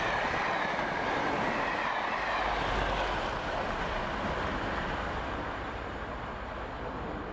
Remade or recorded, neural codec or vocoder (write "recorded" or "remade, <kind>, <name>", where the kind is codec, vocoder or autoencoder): recorded